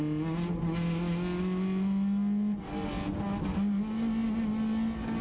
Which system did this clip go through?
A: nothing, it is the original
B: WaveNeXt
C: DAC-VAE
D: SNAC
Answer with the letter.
A